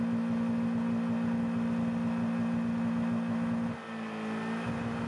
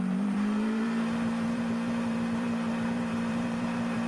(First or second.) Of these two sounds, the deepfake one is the second